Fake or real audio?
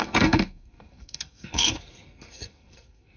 fake